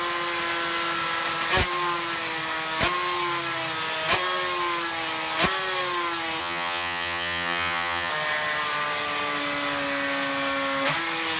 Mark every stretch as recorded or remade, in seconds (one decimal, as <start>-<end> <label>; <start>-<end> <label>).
0.0-6.4 recorded; 6.4-8.1 remade; 8.1-11.4 recorded